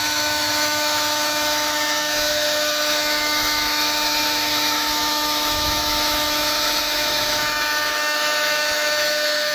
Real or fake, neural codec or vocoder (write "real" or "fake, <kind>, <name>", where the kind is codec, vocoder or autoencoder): fake, autoencoder, DAC-VAE